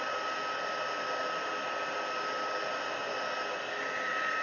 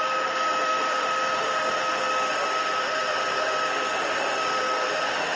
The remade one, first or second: second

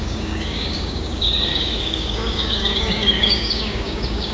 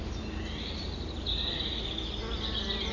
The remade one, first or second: first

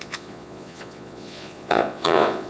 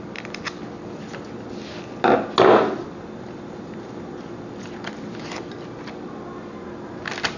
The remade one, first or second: first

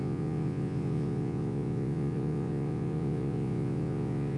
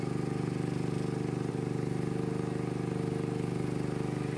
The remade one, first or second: first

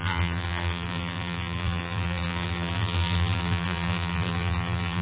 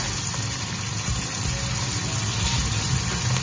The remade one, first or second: first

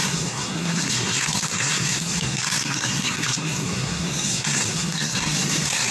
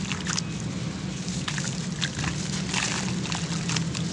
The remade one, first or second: first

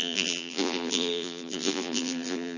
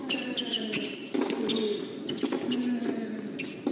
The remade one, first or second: first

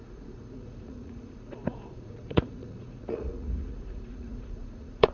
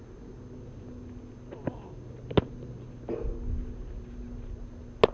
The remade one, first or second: first